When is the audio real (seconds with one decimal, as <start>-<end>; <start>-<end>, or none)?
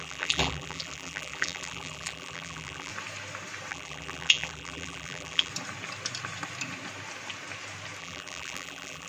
2.9-3.7; 5.5-8.0